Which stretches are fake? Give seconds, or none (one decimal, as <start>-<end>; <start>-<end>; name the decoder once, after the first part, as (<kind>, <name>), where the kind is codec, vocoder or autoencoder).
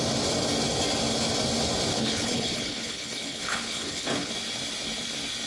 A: 1.9-4.3 (codec, HILCodec)